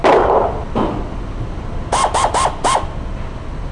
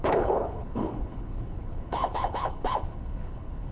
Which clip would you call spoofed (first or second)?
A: second